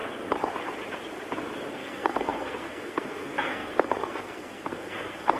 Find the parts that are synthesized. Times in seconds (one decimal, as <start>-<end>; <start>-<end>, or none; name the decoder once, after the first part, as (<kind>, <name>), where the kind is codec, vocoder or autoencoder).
1.7-5.4 (codec, SNAC)

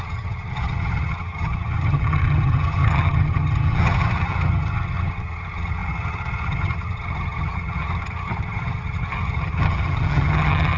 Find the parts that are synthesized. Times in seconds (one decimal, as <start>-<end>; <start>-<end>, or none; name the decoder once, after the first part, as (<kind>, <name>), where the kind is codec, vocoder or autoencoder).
0.0-10.8 (vocoder, HiFi-GAN)

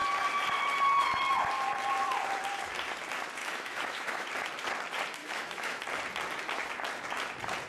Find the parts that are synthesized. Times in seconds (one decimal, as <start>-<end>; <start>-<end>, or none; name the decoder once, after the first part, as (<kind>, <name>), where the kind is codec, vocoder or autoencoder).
3.4-4.3 (autoencoder, DAC-VAE); 5.2-5.8

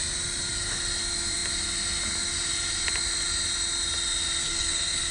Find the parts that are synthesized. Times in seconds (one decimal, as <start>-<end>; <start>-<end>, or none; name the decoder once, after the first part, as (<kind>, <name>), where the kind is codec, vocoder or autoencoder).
4.4-5.1 (codec, SNAC)

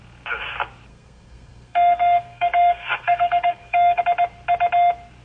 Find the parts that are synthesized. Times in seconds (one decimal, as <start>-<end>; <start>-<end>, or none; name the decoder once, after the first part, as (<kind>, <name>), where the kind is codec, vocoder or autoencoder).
0.9-4.0 (codec, SNAC)

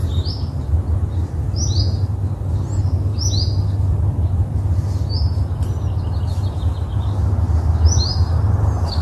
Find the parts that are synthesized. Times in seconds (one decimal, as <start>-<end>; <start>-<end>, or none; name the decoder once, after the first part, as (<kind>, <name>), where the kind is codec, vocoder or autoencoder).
none

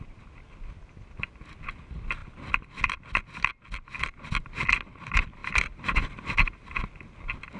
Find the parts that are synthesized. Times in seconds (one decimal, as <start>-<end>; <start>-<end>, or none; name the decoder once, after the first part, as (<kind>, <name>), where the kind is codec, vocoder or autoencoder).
2.2-2.8 (vocoder, BigVGAN v2); 5.4-6.7

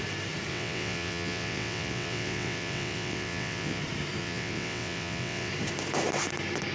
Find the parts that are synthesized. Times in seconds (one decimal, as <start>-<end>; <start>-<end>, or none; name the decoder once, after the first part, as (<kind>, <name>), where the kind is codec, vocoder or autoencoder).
0.5-3.8 (vocoder, WaveNeXt); 4.2-5.5